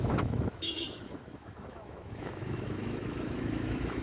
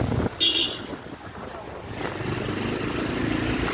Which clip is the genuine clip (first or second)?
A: second